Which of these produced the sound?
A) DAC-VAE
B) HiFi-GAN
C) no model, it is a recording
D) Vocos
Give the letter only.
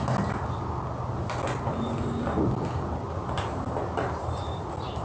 C